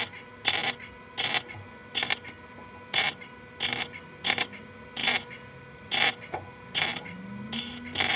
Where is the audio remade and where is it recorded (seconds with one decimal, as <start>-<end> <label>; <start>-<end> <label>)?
0.0-8.2 recorded